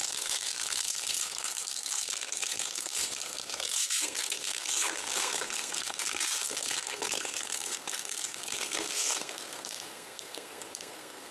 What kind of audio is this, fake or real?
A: fake